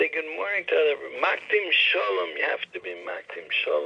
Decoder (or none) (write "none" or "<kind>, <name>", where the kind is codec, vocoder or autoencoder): none